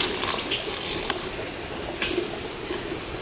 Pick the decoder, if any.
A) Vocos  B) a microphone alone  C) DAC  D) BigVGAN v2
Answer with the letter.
B